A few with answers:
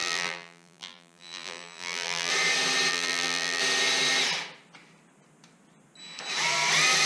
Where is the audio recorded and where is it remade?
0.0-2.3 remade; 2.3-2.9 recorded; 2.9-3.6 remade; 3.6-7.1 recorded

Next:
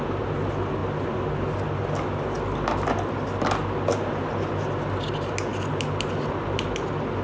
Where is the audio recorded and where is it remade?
0.0-7.2 recorded

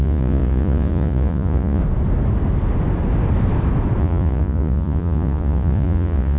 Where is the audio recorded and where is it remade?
0.0-1.8 remade; 1.8-4.0 recorded; 4.0-6.4 remade